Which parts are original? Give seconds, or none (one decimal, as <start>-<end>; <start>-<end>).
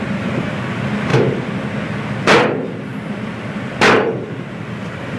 0.0-5.2